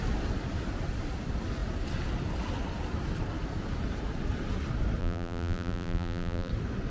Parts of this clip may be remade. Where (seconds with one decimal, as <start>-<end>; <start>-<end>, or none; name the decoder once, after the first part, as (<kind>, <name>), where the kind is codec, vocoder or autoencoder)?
5.0-6.5 (vocoder, BigVGAN v2)